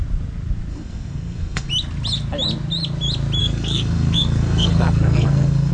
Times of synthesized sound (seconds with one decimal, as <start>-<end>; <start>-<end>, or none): 0.7-1.7; 3.4-5.7